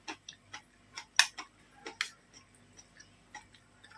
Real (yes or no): yes